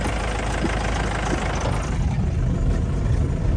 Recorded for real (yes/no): yes